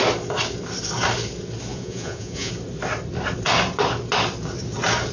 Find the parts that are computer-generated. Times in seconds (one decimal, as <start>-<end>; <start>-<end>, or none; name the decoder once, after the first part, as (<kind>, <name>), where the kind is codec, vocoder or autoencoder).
1.7-2.5 (vocoder, Vocos)